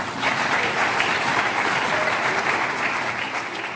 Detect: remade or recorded remade